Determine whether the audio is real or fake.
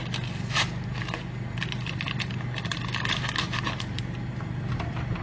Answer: real